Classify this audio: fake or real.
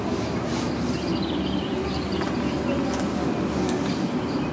real